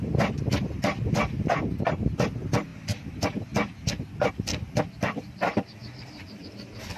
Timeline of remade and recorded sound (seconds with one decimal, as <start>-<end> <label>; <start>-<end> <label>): 0.0-7.0 recorded